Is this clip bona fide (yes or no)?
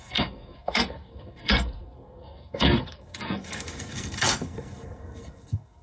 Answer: no